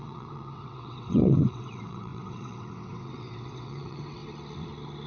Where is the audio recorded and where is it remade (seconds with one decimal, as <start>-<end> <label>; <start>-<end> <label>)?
0.0-4.2 remade; 4.2-5.1 recorded